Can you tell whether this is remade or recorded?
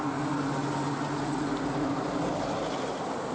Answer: recorded